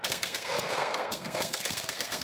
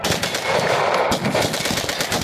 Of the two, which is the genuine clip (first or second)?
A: second